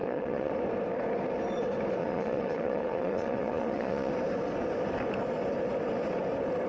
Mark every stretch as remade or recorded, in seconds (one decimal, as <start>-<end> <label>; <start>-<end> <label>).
0.0-0.5 remade; 0.5-2.0 recorded; 2.0-4.1 remade; 4.1-6.7 recorded